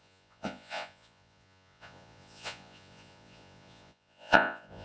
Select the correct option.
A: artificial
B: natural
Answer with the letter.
A